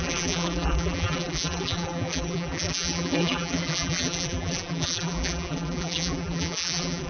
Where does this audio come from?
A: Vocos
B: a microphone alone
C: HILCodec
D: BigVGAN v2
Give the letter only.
D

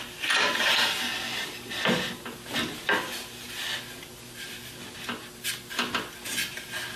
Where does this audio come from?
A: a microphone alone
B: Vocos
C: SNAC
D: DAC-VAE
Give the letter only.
A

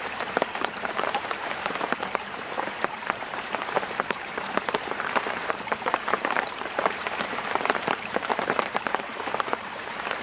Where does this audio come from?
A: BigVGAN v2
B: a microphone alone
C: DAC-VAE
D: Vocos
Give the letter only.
A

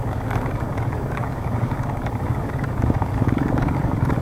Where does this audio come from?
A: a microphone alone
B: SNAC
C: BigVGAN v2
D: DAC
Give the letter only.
D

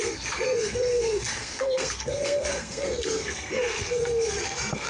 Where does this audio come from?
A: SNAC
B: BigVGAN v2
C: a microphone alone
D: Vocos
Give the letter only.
A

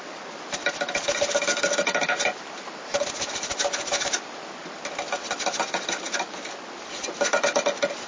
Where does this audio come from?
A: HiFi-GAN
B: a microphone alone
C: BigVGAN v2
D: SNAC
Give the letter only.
B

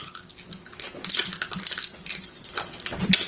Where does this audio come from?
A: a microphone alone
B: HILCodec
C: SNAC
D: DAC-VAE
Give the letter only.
A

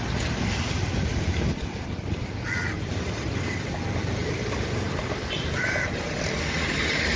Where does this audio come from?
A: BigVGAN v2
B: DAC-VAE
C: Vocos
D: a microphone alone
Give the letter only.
D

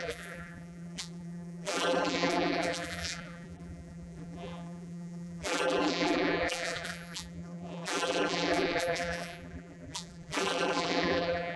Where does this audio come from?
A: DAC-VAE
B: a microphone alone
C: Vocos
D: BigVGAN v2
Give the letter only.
D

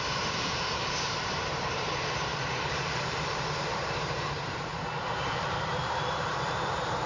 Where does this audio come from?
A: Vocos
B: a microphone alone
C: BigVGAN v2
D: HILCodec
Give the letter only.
C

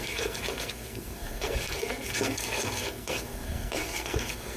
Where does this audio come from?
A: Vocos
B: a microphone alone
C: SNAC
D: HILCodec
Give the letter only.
C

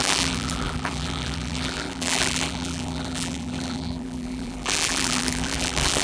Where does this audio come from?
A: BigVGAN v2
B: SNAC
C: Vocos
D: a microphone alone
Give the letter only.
A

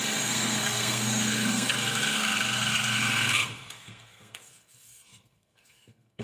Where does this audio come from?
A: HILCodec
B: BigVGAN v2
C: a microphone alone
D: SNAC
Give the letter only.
D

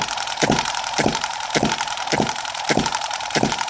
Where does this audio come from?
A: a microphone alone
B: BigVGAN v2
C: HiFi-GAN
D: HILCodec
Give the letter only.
B